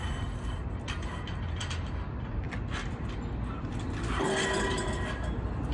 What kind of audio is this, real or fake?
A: real